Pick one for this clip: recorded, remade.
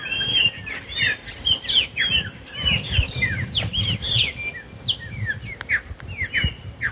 recorded